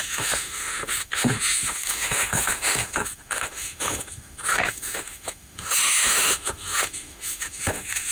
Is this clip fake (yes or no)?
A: yes